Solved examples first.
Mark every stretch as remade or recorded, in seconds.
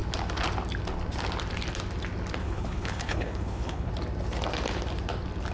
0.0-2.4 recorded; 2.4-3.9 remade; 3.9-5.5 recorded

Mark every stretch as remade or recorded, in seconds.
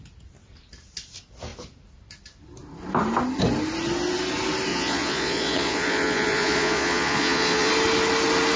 0.0-4.7 recorded; 4.7-7.7 remade; 7.7-8.6 recorded